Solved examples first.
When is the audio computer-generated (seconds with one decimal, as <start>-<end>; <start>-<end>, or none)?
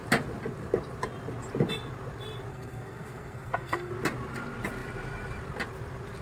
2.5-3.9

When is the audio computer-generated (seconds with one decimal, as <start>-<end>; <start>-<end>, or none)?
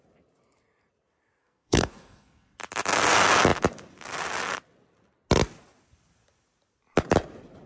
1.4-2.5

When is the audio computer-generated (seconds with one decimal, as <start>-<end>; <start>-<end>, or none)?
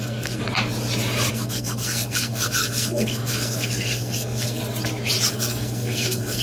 0.0-0.4; 1.3-4.6; 5.3-6.4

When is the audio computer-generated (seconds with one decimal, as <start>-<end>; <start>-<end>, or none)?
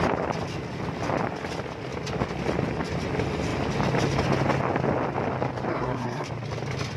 5.7-6.3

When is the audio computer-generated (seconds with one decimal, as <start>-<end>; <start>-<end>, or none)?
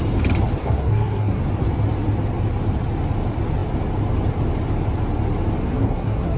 0.6-1.4; 5.6-6.4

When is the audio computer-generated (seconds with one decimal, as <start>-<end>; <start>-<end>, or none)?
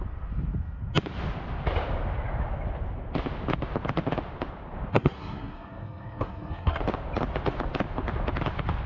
4.9-6.8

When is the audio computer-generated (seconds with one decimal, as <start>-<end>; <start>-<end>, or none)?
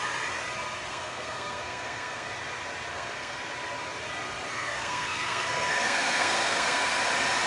0.9-2.3; 2.9-3.4; 4.5-6.9